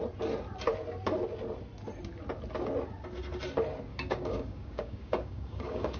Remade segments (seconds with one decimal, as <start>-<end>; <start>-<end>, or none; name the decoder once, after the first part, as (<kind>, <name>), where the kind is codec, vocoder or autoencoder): 3.9-6.0 (codec, DAC)